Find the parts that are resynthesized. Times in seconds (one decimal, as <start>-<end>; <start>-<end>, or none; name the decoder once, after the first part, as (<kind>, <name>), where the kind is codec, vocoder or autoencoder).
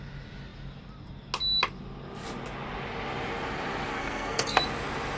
3.9-4.6 (codec, SNAC)